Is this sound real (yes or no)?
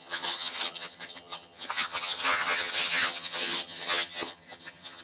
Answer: no